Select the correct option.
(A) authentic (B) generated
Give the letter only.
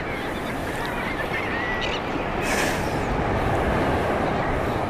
A